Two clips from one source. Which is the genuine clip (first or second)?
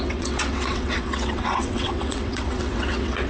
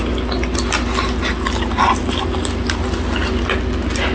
second